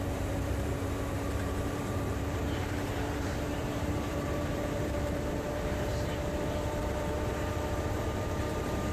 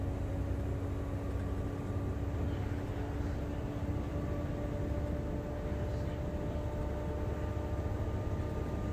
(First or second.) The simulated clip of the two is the first